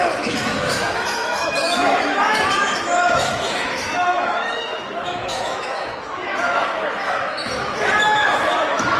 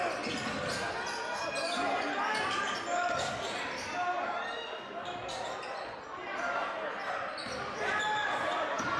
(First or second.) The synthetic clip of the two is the first